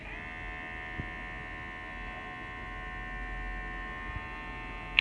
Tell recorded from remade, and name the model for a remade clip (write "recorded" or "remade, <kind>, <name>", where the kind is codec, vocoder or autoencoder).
recorded